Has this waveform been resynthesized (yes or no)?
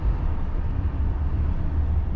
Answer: no